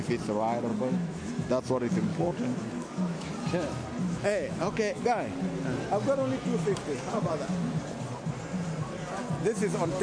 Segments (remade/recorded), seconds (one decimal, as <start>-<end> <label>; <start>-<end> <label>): 0.0-0.7 recorded; 0.7-1.3 remade; 1.3-2.1 recorded; 2.1-3.3 remade; 3.3-4.0 recorded; 4.0-5.0 remade; 5.0-10.0 recorded